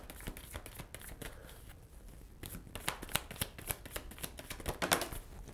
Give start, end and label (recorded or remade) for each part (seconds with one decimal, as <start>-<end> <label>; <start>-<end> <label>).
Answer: 0.0-5.5 recorded